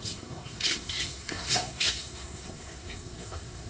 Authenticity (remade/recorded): remade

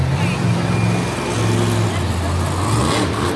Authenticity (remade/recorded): recorded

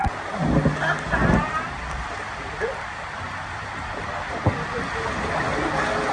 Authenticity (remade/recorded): recorded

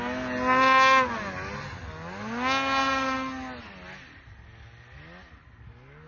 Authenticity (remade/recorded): recorded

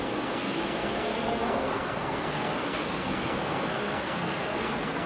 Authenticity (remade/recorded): remade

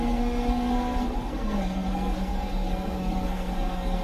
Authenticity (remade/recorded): remade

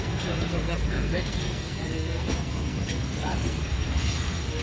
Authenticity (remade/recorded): remade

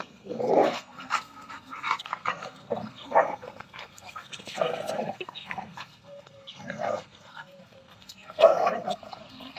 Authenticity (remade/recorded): remade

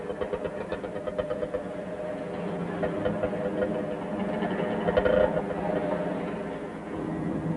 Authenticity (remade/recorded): recorded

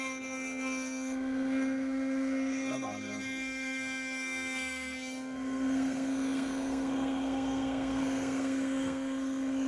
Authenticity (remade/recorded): remade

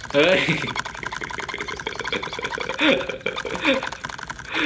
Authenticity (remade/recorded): recorded